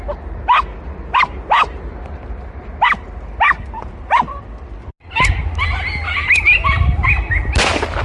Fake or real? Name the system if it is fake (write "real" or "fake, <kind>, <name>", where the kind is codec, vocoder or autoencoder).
real